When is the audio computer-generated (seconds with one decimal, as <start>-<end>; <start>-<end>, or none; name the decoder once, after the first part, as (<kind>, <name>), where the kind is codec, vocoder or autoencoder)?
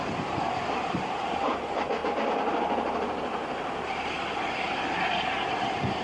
none